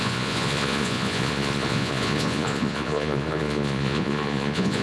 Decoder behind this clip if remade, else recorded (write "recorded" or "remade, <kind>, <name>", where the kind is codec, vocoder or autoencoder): remade, vocoder, Vocos